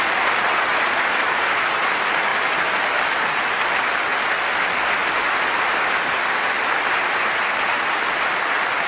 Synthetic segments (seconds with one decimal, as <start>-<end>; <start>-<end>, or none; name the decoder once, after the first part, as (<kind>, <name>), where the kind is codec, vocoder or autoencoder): none